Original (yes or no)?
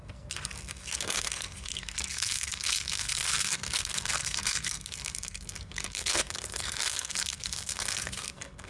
no